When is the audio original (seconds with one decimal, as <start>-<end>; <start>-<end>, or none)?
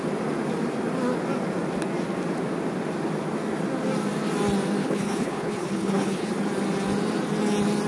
0.0-4.8; 6.3-7.9